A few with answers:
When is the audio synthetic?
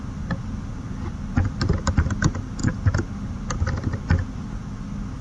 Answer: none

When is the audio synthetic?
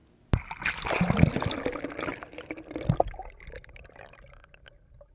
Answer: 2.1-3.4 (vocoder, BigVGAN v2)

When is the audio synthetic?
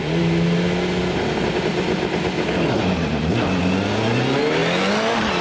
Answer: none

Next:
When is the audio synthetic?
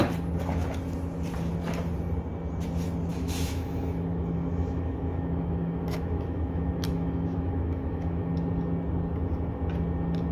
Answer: 3.1-8.3 (autoencoder, DAC-VAE)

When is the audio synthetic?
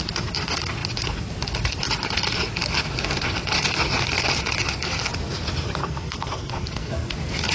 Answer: 5.8-6.9 (codec, SNAC)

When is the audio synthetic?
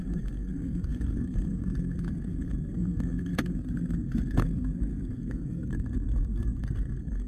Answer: 0.0-7.3 (codec, SNAC)